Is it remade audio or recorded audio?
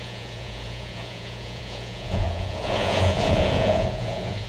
remade